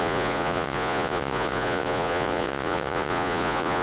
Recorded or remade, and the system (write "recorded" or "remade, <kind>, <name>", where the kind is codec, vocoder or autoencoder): remade, vocoder, Vocos